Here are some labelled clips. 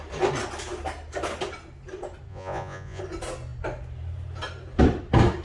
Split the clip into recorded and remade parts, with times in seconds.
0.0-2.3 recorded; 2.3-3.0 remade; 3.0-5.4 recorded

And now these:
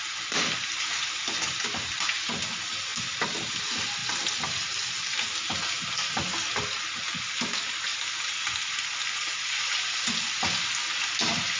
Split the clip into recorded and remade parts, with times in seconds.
0.0-11.6 recorded